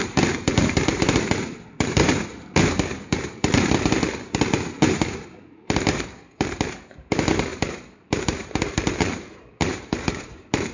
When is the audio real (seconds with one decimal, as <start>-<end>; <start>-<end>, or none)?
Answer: none